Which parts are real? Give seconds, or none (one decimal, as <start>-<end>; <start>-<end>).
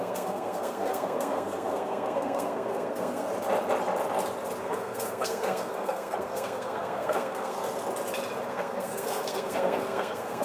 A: 3.3-4.6; 7.6-8.5